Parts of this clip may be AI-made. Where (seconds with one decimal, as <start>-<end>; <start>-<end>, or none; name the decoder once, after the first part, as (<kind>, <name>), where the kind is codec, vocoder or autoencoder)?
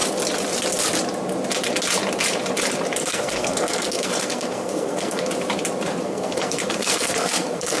3.0-5.3 (codec, SNAC); 6.0-7.8